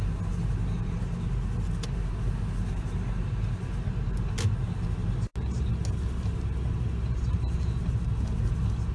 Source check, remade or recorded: recorded